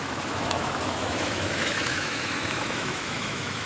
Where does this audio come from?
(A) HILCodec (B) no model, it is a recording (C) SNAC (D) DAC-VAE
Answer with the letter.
D